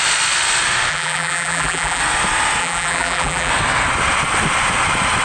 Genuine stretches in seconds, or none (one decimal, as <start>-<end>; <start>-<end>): 0.0-0.9; 2.0-2.6; 3.5-5.2